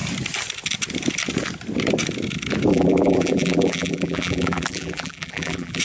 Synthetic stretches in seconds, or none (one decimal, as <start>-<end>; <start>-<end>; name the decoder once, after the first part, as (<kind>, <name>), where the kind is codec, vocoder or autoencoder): 2.7-5.8 (vocoder, BigVGAN v2)